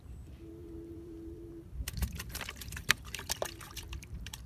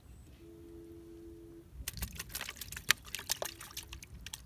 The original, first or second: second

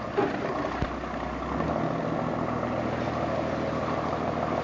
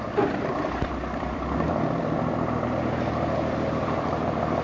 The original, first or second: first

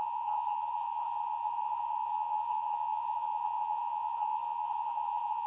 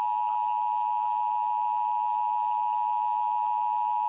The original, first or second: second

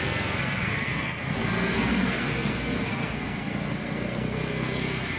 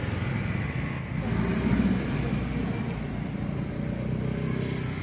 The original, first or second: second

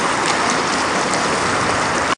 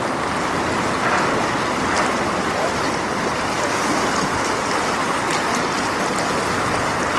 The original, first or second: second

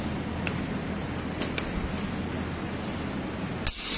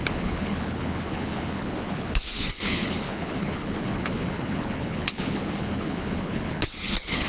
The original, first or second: first